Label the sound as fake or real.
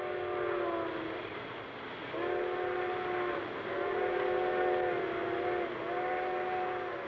real